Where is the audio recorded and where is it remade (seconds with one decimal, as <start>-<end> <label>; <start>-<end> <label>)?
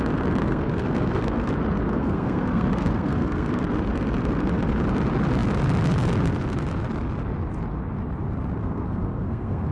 0.0-0.4 recorded; 0.4-1.5 remade; 1.5-1.9 recorded; 1.9-3.6 remade; 3.6-8.6 recorded; 8.6-9.7 remade